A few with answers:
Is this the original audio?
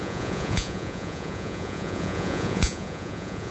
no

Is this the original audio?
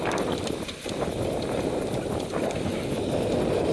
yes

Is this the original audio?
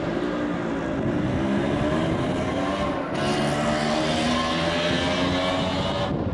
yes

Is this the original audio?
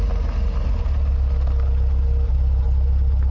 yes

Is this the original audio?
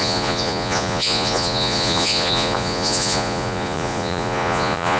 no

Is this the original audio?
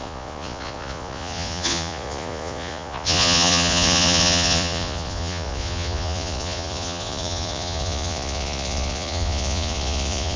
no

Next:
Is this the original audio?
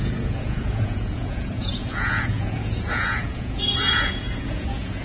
no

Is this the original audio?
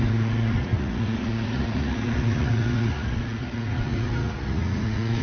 no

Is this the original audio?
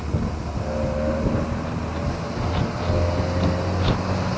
yes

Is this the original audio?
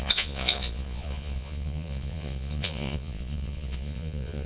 no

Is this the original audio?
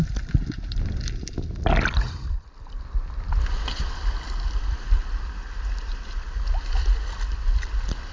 yes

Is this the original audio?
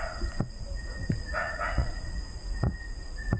no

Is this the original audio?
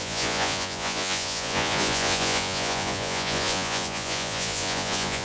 no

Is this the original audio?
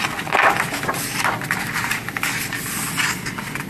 yes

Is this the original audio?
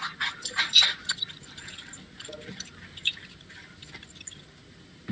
yes